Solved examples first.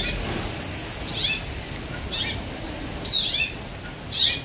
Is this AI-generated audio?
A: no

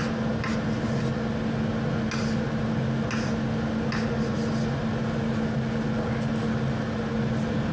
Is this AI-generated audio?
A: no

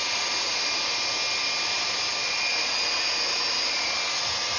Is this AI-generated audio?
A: no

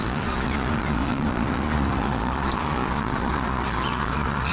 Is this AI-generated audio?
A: yes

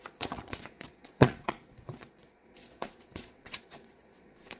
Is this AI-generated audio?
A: yes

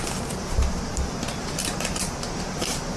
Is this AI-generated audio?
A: no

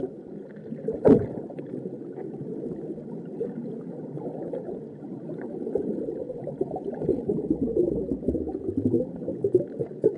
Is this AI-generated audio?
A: no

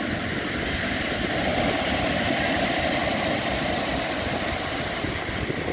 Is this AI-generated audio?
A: no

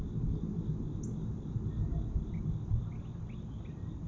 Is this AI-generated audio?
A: no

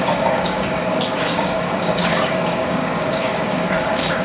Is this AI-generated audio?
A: yes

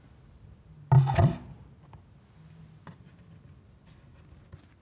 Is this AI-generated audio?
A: no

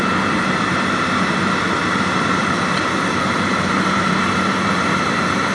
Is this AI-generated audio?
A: yes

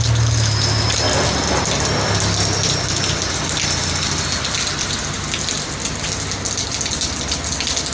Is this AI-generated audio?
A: no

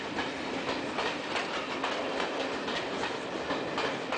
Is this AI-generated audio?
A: no